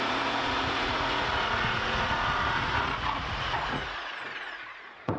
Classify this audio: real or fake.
fake